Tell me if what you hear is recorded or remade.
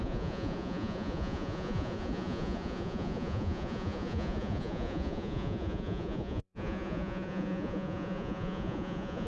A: remade